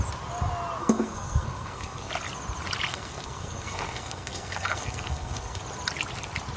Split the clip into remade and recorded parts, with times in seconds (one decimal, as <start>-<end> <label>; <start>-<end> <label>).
0.0-0.8 recorded; 0.8-2.1 remade; 2.1-2.9 recorded; 2.9-5.6 remade; 5.6-6.6 recorded